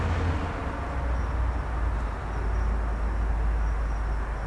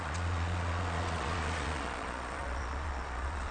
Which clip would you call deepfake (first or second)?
second